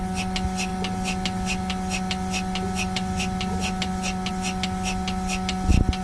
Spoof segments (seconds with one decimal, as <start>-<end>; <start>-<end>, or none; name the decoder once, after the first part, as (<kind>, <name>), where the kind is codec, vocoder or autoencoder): none